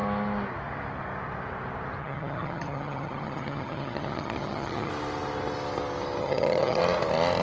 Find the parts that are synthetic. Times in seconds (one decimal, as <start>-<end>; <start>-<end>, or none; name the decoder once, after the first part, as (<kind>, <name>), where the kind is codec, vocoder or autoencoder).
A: 2.0-4.9 (vocoder, HiFi-GAN); 6.2-6.8